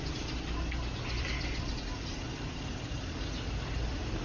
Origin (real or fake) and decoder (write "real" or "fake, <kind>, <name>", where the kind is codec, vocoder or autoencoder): real